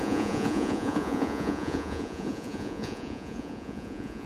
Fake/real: fake